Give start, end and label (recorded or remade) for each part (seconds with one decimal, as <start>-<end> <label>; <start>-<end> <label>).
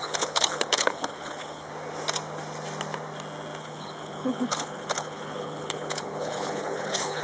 0.0-1.7 remade; 1.7-3.6 recorded; 3.6-7.2 remade